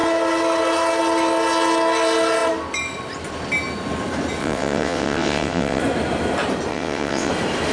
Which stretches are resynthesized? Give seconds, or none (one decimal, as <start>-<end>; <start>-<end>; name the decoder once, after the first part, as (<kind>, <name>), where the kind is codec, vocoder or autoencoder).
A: 4.4-5.8 (vocoder, WaveNeXt); 6.7-7.3